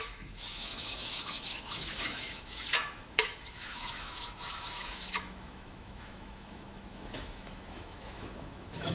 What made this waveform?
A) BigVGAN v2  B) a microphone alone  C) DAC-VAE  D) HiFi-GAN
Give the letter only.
C